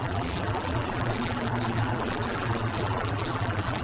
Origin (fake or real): fake